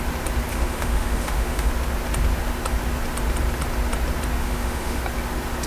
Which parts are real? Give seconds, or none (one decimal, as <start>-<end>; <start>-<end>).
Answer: 0.0-0.5; 1.7-4.4; 5.0-5.7